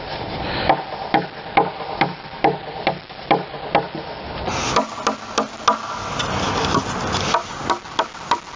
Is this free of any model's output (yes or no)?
yes